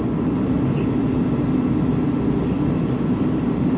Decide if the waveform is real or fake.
real